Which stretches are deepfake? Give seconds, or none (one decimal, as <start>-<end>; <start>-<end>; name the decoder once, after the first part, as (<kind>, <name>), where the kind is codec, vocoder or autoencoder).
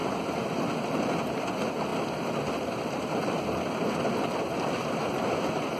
none